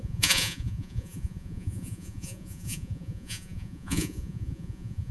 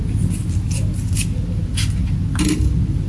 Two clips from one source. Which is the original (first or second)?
second